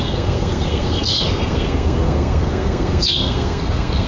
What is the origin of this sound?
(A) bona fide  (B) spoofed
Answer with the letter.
B